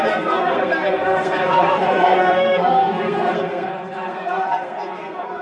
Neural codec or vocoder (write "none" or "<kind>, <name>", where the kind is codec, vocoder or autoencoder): codec, SNAC